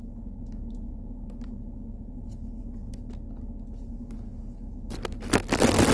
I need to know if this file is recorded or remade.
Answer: recorded